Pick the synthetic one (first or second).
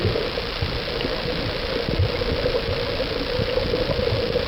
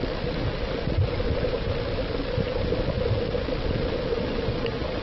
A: second